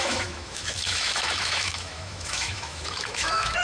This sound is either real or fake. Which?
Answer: fake